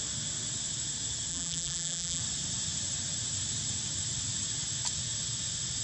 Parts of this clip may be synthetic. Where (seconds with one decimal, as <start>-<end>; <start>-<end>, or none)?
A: 1.3-2.2